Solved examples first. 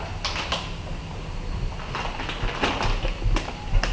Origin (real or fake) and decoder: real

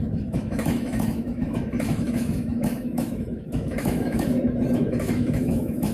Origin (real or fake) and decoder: fake, autoencoder, DAC-VAE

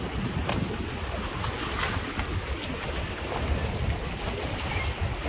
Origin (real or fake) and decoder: real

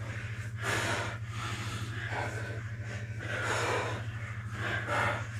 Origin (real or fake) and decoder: real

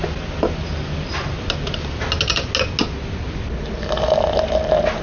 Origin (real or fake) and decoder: real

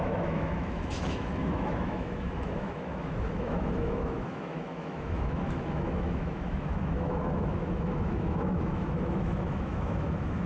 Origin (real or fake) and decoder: fake, autoencoder, DAC-VAE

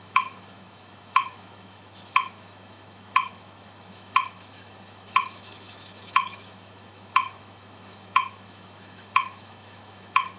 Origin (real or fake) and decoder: fake, autoencoder, DAC-VAE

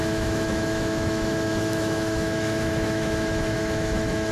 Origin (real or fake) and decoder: fake, autoencoder, DAC-VAE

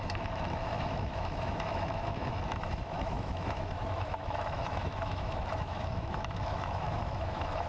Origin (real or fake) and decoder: fake, autoencoder, DAC-VAE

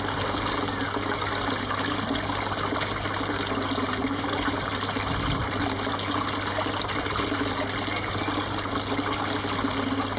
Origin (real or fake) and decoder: real